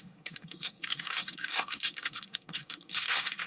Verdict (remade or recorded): remade